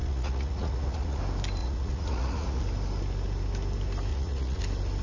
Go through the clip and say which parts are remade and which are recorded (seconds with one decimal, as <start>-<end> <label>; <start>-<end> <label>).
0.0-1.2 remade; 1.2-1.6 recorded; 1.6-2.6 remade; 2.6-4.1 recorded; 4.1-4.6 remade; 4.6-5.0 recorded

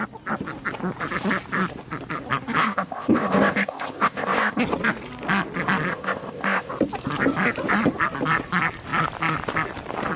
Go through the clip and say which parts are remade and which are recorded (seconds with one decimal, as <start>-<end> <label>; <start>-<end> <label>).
0.0-2.6 recorded; 2.6-4.6 remade; 4.6-5.9 recorded; 5.9-6.7 remade; 6.7-10.2 recorded

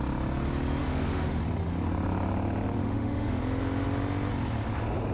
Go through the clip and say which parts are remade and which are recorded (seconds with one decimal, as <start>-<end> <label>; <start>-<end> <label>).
0.0-0.8 recorded; 0.8-1.4 remade; 1.4-2.8 recorded; 2.8-3.4 remade; 3.4-5.1 recorded

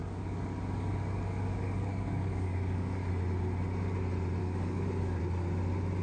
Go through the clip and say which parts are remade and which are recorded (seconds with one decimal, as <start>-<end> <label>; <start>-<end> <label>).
0.0-3.1 remade; 3.1-4.4 recorded; 4.4-5.2 remade; 5.2-6.0 recorded